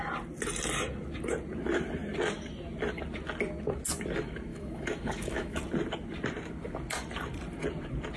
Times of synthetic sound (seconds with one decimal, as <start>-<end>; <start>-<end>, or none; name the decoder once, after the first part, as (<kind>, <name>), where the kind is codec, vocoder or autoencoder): 4.5-5.6 (autoencoder, DAC-VAE)